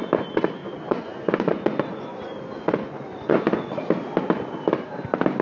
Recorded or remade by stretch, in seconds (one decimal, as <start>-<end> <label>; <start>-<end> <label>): 0.0-0.6 recorded; 0.6-3.8 remade; 3.8-5.4 recorded